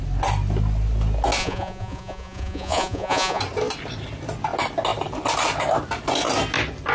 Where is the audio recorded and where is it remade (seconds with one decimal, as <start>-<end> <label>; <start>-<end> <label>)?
0.0-1.4 recorded; 1.4-3.4 remade; 3.4-6.9 recorded